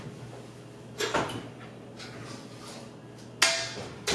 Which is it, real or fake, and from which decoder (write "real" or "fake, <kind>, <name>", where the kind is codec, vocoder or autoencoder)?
real